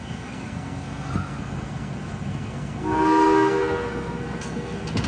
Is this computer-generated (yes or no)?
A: yes